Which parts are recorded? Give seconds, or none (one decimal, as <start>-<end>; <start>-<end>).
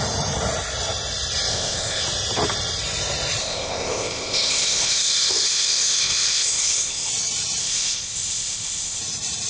0.0-1.5; 2.0-3.4; 7.1-7.6; 9.0-9.5